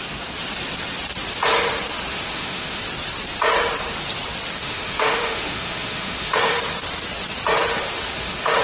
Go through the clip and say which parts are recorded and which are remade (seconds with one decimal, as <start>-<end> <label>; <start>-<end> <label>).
0.0-2.1 recorded; 2.1-2.8 remade; 2.8-4.6 recorded; 4.6-6.6 remade; 6.6-7.7 recorded; 7.7-8.6 remade